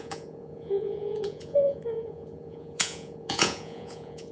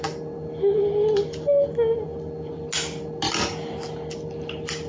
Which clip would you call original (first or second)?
second